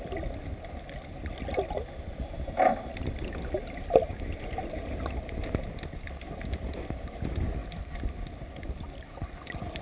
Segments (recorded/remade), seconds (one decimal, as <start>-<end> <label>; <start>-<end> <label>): 0.0-9.8 recorded